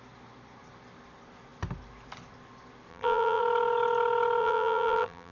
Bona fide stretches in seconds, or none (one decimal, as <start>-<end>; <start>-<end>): 0.0-2.9; 3.4-4.4